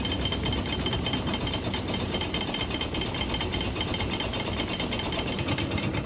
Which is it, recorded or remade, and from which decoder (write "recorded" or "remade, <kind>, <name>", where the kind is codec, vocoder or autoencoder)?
recorded